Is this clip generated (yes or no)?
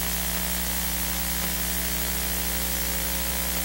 no